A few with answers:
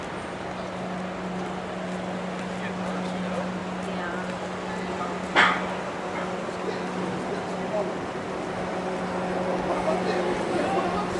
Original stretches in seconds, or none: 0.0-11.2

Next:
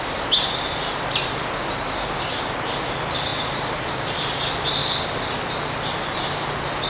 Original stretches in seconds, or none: 0.0-6.9

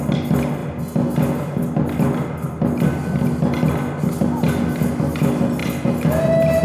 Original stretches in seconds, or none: 0.0-6.6

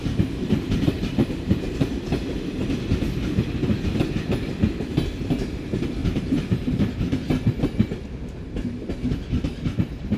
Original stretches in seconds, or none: 1.9-6.0; 6.6-10.2

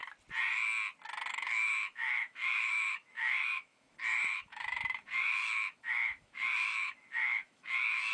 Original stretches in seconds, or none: 0.0-1.3

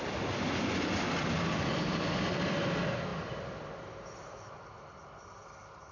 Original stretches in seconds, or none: 0.0-5.9

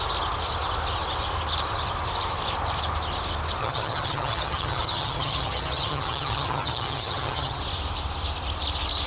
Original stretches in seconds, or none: 0.0-3.6; 7.6-9.1